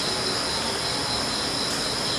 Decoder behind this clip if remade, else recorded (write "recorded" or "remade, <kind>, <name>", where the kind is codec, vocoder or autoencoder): recorded